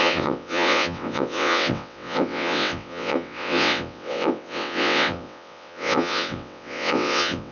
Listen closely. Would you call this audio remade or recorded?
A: remade